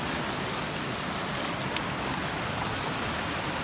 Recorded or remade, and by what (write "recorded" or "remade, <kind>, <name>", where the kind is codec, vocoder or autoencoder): recorded